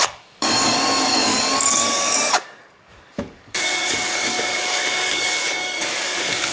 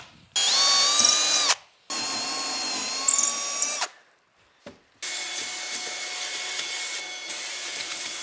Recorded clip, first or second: second